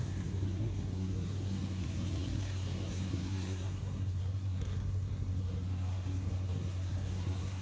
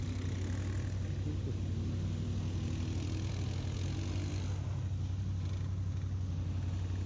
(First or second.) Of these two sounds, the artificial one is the first